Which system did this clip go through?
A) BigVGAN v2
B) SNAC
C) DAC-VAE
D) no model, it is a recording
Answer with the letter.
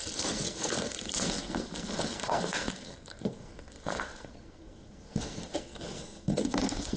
B